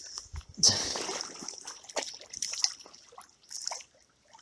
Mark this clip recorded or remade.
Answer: recorded